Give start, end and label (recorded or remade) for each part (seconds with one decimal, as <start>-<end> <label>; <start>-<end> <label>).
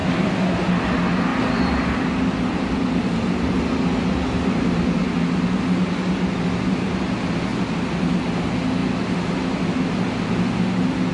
0.0-0.7 remade; 0.7-1.3 recorded; 1.3-3.6 remade; 3.6-7.5 recorded; 7.5-8.2 remade; 8.2-11.1 recorded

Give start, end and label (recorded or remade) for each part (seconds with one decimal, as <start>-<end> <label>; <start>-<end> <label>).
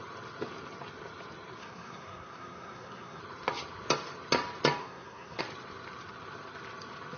0.0-1.6 recorded; 1.6-3.2 remade; 3.2-4.8 recorded; 4.8-5.4 remade; 5.4-7.2 recorded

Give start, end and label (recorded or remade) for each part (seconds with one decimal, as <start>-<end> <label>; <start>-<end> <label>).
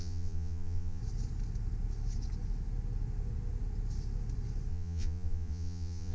0.0-1.0 remade; 1.0-4.7 recorded; 4.7-6.1 remade